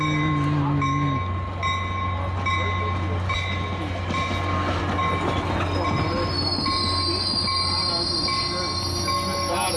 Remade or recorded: recorded